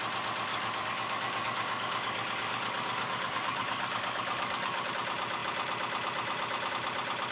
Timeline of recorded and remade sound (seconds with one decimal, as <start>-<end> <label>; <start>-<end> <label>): 0.0-0.5 recorded; 0.5-4.9 remade; 4.9-7.3 recorded